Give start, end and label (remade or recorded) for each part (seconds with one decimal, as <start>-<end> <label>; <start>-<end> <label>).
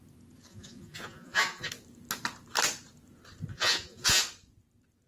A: 0.0-0.5 recorded; 0.5-1.7 remade; 1.7-3.5 recorded; 3.5-4.2 remade; 4.2-5.1 recorded